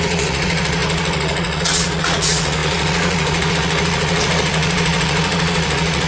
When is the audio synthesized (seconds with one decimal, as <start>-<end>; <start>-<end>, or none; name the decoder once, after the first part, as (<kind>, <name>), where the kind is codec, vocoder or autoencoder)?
0.0-6.1 (vocoder, Vocos)